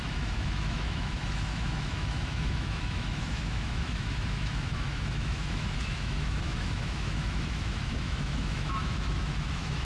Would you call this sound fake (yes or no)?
yes